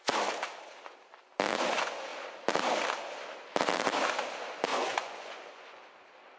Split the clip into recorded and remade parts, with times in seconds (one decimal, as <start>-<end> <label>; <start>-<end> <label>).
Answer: 0.0-4.7 recorded; 4.7-5.8 remade; 5.8-6.4 recorded